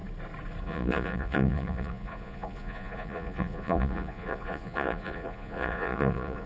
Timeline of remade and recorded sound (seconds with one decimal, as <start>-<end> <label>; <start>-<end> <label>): 0.0-0.6 recorded; 0.6-6.5 remade